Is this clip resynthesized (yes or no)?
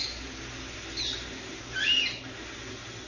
no